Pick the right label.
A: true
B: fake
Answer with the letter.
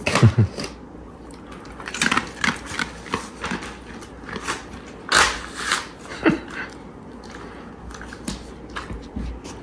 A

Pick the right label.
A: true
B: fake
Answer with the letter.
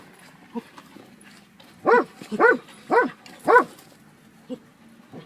A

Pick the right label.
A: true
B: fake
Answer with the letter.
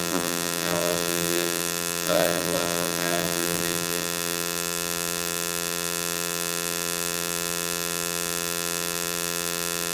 B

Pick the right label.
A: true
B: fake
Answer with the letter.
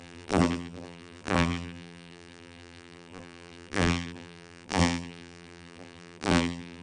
B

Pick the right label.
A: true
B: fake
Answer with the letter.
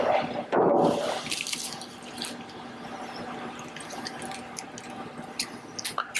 A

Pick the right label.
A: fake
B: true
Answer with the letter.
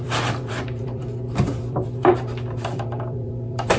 A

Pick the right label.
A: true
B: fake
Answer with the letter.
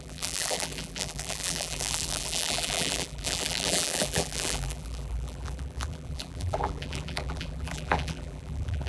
B